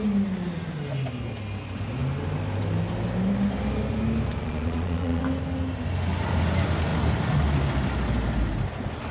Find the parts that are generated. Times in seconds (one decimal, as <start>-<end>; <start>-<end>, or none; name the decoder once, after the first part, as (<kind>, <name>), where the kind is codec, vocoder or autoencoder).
4.4-5.2 (vocoder, Vocos)